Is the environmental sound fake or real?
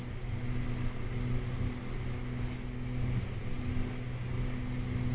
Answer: real